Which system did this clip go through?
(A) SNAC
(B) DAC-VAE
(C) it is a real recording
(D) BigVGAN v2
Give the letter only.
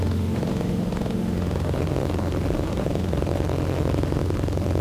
B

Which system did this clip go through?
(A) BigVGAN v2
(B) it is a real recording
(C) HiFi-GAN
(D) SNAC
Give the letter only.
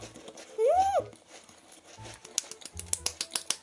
B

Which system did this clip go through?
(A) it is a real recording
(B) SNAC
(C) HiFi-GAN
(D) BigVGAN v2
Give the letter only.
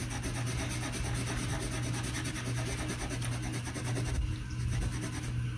A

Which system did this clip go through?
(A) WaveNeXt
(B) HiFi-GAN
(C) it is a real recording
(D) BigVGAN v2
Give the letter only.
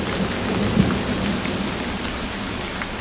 C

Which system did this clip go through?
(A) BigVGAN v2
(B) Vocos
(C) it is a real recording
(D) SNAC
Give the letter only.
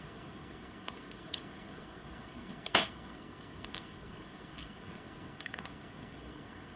D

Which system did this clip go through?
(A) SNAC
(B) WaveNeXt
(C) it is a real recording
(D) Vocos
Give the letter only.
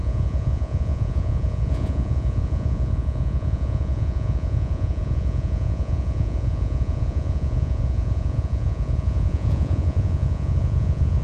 D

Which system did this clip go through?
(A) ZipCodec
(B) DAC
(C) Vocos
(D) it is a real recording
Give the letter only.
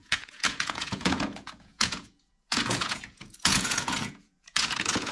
C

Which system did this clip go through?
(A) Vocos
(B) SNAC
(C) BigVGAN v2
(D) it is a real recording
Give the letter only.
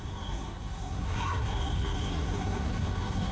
B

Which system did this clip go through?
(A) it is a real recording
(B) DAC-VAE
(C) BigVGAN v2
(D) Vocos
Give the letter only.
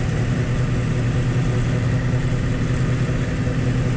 A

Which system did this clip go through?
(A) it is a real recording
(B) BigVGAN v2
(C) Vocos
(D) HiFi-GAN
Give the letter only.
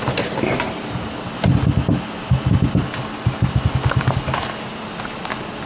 A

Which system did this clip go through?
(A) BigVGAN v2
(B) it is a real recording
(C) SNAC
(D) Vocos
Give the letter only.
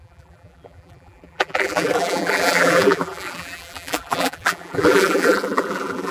A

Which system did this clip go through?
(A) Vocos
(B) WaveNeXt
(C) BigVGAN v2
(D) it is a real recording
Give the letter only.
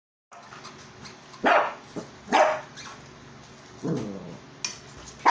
D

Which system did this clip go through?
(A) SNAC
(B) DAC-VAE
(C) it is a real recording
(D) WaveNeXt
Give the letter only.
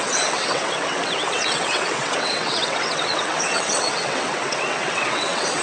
D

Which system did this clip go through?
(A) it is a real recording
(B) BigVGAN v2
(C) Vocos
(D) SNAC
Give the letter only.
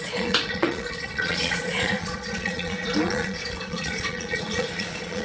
C